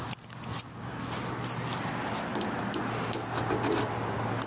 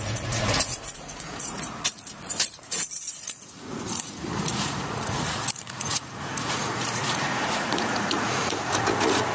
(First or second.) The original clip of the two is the first